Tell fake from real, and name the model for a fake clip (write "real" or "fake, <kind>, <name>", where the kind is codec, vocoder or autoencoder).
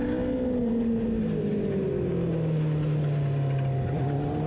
real